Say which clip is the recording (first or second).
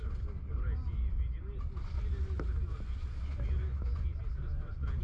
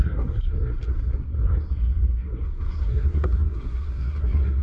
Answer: first